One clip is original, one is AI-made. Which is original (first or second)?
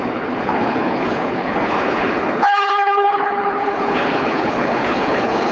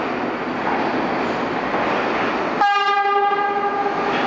second